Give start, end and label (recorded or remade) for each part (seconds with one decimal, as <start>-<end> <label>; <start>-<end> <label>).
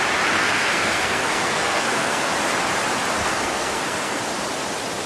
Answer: 0.0-0.4 recorded; 0.4-2.3 remade; 2.3-3.2 recorded; 3.2-4.2 remade; 4.2-5.1 recorded